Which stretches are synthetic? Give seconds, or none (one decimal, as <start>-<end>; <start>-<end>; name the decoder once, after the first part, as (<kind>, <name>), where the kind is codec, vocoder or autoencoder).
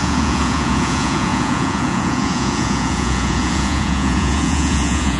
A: 0.0-5.2 (vocoder, Vocos)